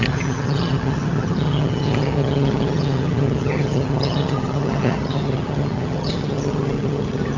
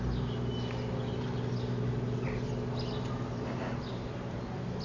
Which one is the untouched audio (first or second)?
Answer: second